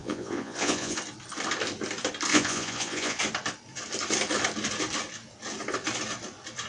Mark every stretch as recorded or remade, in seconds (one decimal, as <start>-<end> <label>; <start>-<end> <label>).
0.0-1.0 remade; 1.0-2.3 recorded; 2.3-3.2 remade; 3.2-6.7 recorded